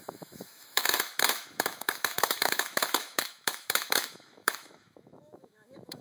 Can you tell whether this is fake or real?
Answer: fake